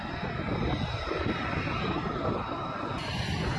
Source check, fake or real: real